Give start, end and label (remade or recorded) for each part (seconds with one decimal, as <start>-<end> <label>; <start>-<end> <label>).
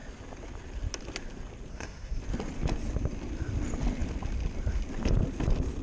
0.0-1.7 recorded; 1.7-2.2 remade; 2.2-5.8 recorded